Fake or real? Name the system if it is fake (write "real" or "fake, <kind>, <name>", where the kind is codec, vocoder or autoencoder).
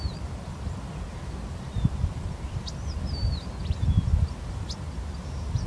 real